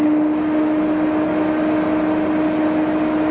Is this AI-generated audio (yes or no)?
no